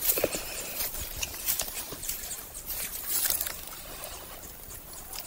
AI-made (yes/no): yes